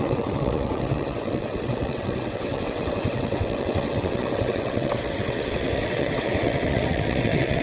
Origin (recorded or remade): remade